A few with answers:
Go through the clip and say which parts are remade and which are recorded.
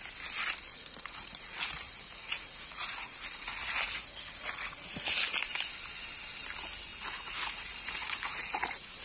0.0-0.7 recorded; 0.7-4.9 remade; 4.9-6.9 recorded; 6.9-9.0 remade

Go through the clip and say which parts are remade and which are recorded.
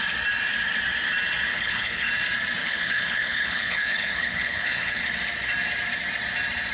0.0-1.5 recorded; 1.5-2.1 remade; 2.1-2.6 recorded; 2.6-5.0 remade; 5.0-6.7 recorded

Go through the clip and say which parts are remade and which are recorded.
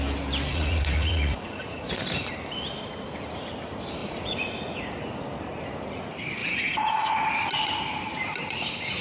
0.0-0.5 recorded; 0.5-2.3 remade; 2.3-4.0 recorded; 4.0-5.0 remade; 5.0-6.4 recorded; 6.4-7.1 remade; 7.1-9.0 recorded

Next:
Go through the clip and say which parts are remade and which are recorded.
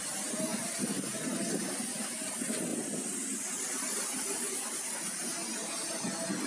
0.0-2.7 recorded; 2.7-4.8 remade; 4.8-6.5 recorded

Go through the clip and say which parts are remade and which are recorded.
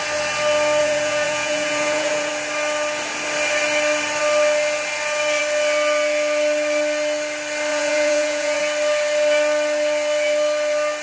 0.0-0.8 recorded; 0.8-2.3 remade; 2.3-7.7 recorded; 7.7-8.6 remade; 8.6-11.0 recorded